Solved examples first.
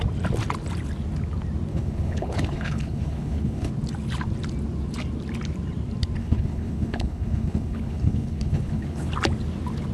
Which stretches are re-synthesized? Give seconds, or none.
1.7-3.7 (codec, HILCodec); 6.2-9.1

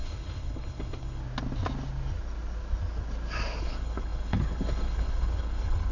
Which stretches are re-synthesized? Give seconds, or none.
0.0-1.2 (codec, HILCodec); 3.6-5.9

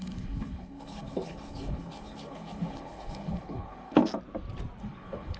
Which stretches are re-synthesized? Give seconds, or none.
0.0-4.0 (codec, HILCodec); 4.8-5.4

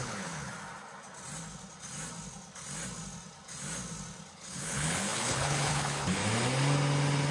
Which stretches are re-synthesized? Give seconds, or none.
0.0-0.5 (codec, HILCodec); 4.3-6.2

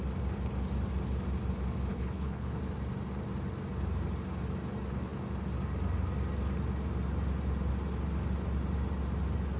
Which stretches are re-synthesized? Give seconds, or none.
1.9-2.6 (codec, HILCodec)

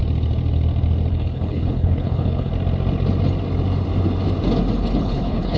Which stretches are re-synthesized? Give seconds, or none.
1.1-2.5 (codec, HILCodec); 5.0-5.6